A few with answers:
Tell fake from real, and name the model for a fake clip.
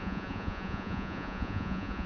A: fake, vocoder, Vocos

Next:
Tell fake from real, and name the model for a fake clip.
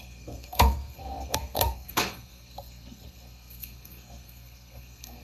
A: fake, codec, SNAC